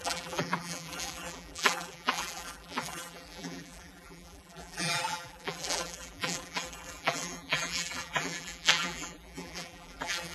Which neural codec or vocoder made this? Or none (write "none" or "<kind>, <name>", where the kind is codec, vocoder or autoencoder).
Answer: vocoder, BigVGAN v2